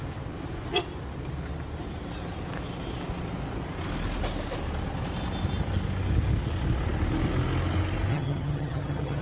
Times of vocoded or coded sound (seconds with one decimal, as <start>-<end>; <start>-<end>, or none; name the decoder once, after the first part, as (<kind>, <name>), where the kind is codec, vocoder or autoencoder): 8.1-9.2 (vocoder, HiFi-GAN)